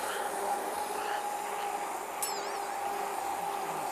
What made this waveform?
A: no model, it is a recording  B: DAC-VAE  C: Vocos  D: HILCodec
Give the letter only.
A